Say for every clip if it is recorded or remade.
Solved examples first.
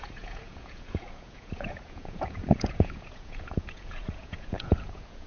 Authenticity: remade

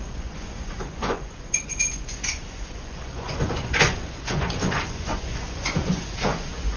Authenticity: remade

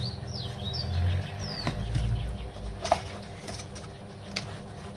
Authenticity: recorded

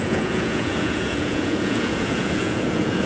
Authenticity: remade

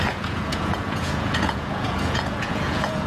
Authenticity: remade